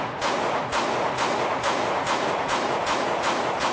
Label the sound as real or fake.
fake